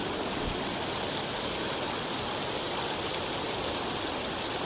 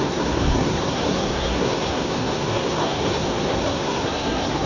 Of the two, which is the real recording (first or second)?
first